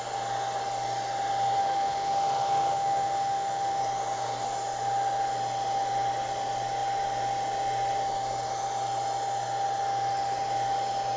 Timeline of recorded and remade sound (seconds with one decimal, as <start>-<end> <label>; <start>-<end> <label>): 0.0-1.6 recorded; 1.6-3.8 remade; 3.8-11.2 recorded